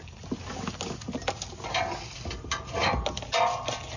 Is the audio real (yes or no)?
yes